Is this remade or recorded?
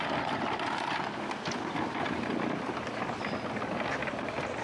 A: recorded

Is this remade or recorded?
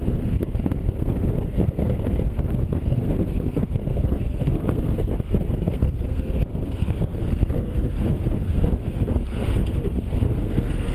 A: remade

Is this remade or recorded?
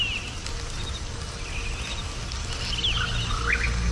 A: recorded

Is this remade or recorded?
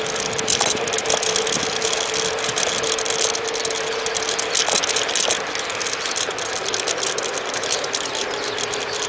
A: recorded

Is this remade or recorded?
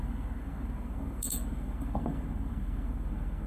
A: remade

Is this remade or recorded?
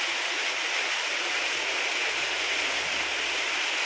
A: recorded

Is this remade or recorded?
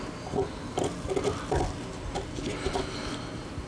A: recorded